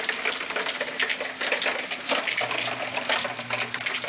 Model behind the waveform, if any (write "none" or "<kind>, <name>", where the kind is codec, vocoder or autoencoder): none